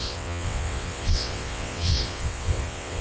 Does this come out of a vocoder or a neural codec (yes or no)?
yes